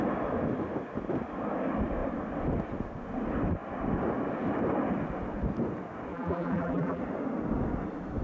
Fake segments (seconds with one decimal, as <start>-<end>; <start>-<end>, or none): 6.1-7.0